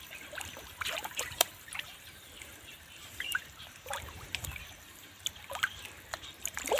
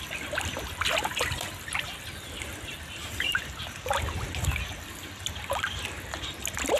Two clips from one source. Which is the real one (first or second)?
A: second